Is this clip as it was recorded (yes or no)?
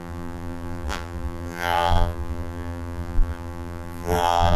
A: no